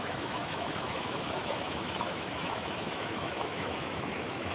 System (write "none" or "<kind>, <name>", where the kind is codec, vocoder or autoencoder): autoencoder, DAC-VAE